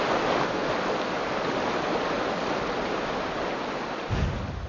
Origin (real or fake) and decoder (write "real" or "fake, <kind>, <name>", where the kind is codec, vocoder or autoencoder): real